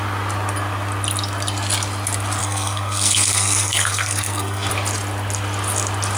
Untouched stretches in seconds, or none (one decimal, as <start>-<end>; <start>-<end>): 0.0-2.4; 4.7-6.2